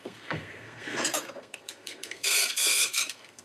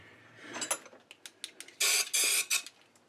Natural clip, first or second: second